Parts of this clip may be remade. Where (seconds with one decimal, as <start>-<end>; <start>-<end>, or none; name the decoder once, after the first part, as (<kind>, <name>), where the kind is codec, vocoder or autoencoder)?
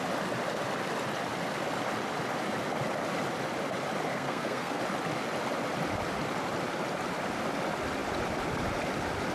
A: 4.1-4.8 (codec, SNAC)